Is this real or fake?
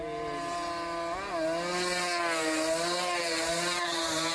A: real